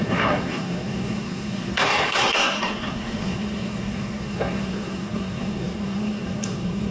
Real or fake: fake